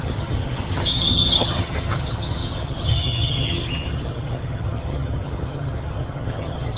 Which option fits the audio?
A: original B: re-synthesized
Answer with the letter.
B